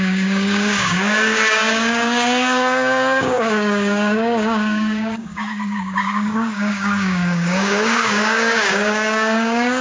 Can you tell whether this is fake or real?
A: fake